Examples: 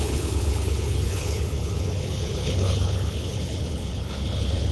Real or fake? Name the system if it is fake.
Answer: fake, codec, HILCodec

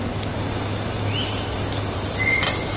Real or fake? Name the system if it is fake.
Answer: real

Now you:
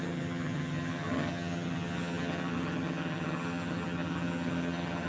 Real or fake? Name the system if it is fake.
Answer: fake, vocoder, HiFi-GAN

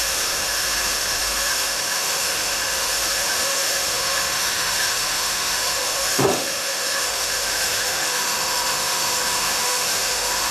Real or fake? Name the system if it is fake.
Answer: fake, autoencoder, DAC-VAE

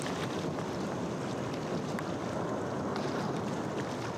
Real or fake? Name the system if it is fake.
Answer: real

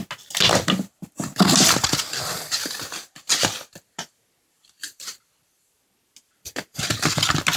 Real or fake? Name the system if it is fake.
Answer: real